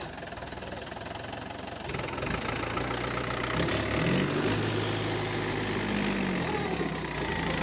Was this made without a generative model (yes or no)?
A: yes